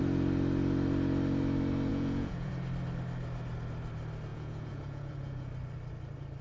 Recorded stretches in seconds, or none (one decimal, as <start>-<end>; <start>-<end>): 0.0-1.9; 2.5-4.3; 5.5-6.4